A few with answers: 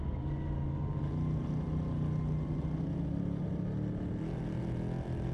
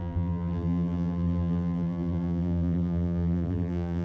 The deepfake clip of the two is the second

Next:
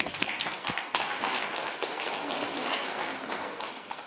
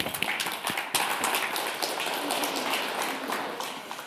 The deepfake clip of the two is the first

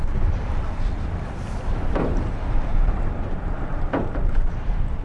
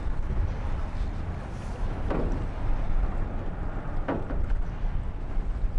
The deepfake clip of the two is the first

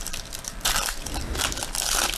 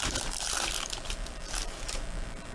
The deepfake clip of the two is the second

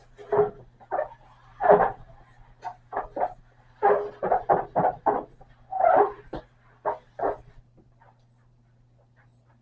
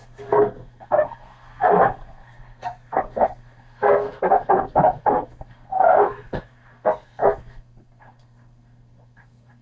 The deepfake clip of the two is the second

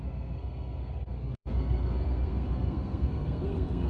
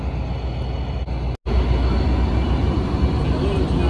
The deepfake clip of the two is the first